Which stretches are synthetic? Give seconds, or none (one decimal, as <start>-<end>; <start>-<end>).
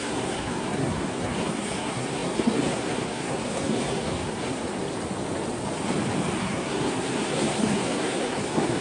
0.0-4.7; 6.4-8.8